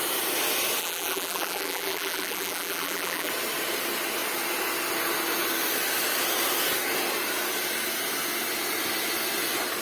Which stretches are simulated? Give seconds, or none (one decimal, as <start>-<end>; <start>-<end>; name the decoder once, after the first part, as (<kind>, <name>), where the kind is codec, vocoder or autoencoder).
0.8-3.3 (vocoder, BigVGAN v2)